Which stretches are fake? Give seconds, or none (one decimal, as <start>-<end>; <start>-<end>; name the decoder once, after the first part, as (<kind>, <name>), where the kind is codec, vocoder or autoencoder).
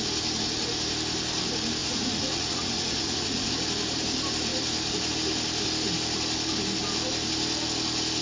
1.8-3.5 (vocoder, Vocos)